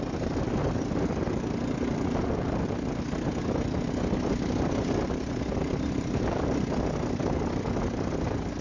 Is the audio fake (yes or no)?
no